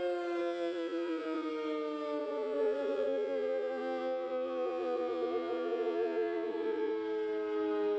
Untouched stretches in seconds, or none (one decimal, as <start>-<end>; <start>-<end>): 0.0-0.4; 1.5-2.2; 6.9-8.0